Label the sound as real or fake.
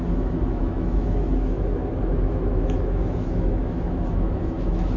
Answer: fake